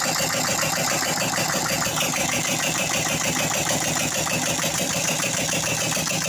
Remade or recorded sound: recorded